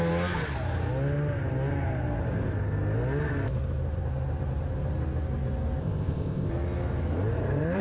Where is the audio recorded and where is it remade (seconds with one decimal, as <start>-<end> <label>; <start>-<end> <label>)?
0.0-5.8 recorded; 5.8-6.5 remade; 6.5-7.8 recorded